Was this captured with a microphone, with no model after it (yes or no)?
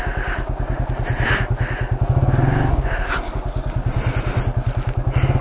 yes